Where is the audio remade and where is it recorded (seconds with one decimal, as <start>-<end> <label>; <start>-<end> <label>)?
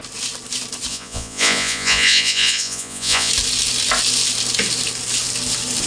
0.0-0.9 recorded; 0.9-3.3 remade; 3.3-5.9 recorded